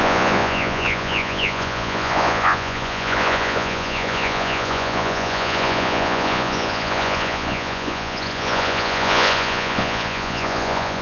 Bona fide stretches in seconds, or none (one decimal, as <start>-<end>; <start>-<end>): none